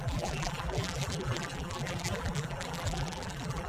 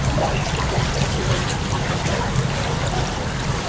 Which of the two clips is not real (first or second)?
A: first